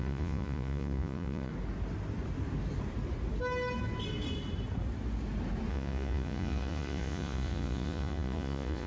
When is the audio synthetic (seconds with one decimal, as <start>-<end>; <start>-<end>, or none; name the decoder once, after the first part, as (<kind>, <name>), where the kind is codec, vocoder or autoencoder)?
0.0-1.5 (vocoder, Vocos); 5.7-8.9